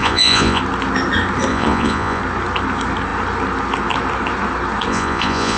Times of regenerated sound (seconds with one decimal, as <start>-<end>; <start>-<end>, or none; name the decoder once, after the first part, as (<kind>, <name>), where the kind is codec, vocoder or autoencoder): 0.0-0.6 (vocoder, Vocos); 1.5-2.2; 4.9-5.6